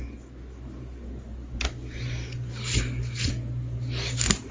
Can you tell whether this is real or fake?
real